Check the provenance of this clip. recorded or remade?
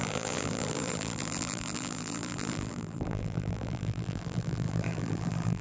remade